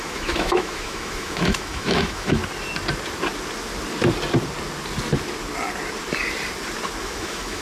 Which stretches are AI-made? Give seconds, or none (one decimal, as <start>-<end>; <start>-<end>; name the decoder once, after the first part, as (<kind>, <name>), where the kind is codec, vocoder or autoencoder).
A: 0.0-2.4 (autoencoder, DAC-VAE); 7.0-7.6